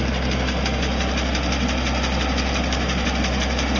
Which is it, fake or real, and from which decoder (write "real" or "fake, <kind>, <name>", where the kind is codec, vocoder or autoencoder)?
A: real